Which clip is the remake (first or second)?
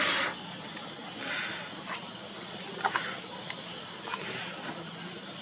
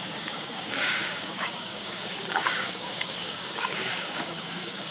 second